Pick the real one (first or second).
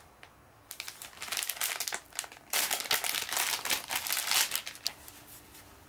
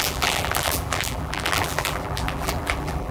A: first